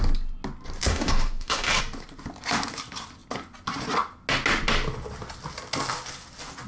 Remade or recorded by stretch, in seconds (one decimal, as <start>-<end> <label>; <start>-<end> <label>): 0.0-0.9 recorded; 0.9-1.8 remade; 1.8-6.7 recorded